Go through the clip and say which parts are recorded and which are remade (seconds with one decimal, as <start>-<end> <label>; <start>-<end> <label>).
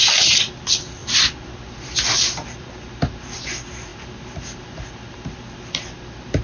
0.0-1.0 remade; 1.0-1.6 recorded; 1.6-6.4 remade